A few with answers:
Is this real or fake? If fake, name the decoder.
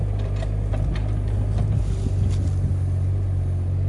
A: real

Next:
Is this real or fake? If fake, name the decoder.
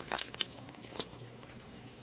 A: fake, codec, SNAC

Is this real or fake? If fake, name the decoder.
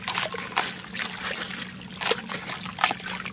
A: real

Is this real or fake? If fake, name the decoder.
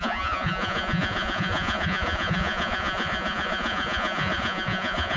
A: fake, vocoder, Vocos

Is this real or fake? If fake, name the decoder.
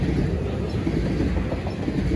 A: real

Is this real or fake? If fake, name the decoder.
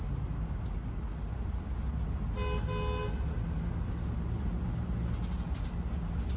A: real